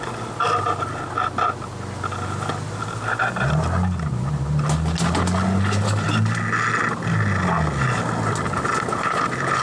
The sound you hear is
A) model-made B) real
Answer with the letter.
B